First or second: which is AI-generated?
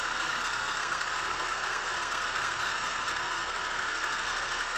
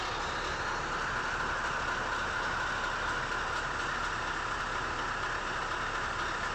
first